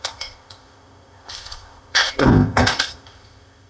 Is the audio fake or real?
fake